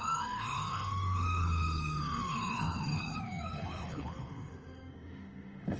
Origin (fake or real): fake